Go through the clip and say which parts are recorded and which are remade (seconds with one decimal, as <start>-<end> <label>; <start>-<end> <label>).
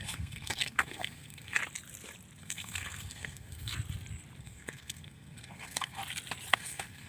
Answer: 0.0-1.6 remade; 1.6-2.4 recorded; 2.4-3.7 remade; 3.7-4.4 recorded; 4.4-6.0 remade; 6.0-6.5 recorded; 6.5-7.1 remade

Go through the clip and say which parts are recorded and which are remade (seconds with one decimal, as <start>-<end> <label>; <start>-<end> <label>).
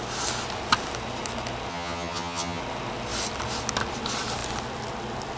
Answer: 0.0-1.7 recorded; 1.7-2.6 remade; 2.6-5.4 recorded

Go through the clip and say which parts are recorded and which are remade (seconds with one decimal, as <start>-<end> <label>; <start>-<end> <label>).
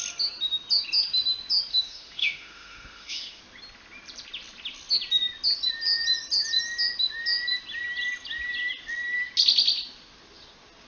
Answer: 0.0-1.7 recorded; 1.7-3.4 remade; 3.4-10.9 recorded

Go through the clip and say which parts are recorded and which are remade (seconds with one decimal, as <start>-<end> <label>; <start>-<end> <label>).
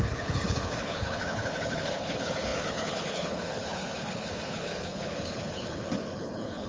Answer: 0.0-6.7 remade